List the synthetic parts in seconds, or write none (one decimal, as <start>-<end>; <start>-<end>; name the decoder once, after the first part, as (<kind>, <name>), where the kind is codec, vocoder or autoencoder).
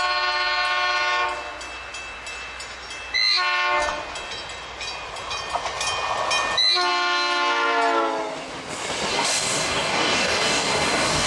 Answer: 9.1-11.3 (codec, DAC)